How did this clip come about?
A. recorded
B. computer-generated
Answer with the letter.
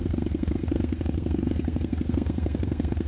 B